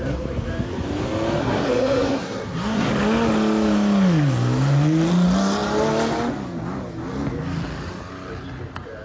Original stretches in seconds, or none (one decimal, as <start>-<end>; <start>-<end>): 0.0-1.4; 2.9-9.0